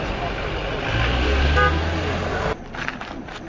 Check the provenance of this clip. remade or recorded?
recorded